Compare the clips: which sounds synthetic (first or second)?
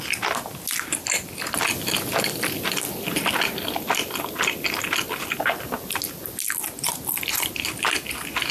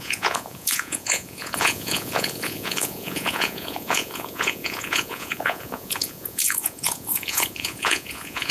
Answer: second